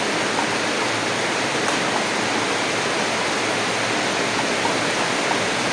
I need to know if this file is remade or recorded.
recorded